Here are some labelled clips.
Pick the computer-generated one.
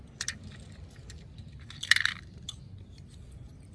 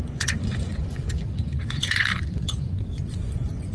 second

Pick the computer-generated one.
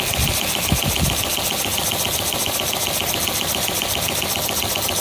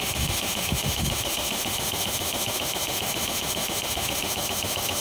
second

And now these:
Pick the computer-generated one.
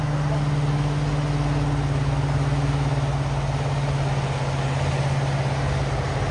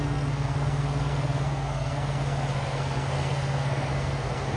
second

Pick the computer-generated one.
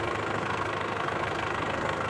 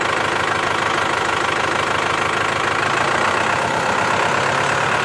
first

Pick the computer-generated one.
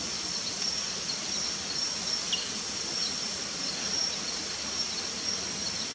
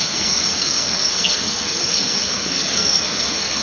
second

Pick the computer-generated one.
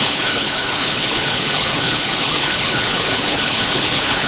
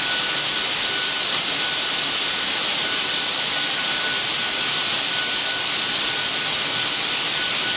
first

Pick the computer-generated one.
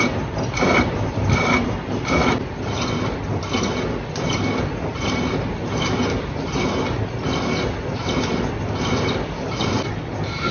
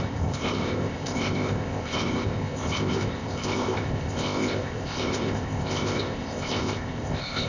second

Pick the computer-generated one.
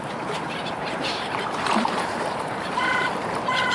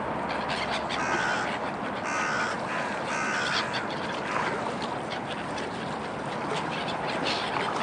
first